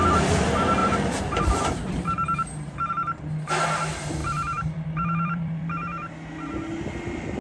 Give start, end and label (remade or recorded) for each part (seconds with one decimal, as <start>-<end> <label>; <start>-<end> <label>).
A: 0.0-0.8 recorded; 0.8-2.9 remade; 2.9-4.2 recorded; 4.2-6.1 remade; 6.1-7.4 recorded

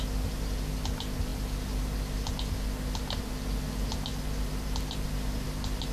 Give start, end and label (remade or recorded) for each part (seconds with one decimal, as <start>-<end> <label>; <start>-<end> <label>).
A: 0.0-5.9 recorded

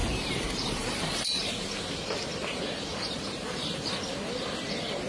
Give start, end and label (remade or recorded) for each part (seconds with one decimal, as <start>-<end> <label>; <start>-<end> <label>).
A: 0.0-1.5 remade; 1.5-2.9 recorded; 2.9-4.0 remade; 4.0-5.1 recorded

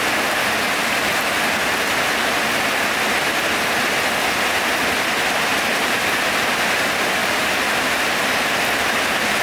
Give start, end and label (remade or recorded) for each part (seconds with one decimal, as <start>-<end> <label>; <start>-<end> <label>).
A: 0.0-5.5 recorded; 5.5-6.0 remade; 6.0-7.2 recorded; 7.2-8.4 remade; 8.4-9.4 recorded

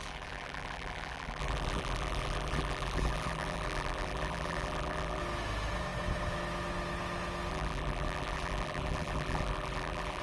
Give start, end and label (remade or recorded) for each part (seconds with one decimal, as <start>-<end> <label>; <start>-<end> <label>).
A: 0.0-5.2 remade; 5.2-7.5 recorded; 7.5-10.2 remade

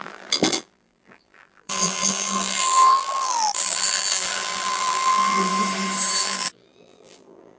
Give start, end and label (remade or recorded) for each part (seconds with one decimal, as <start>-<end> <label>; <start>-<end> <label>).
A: 0.0-5.5 remade; 5.5-6.2 recorded; 6.2-7.6 remade

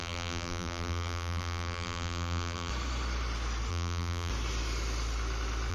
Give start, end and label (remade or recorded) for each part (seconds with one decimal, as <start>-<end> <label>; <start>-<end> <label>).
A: 0.0-2.7 remade; 2.7-3.7 recorded; 3.7-4.3 remade; 4.3-5.7 recorded